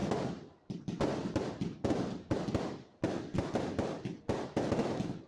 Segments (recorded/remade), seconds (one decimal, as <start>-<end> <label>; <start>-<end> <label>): 0.0-5.3 recorded